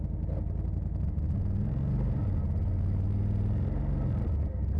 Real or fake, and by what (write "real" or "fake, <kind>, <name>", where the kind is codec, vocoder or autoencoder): real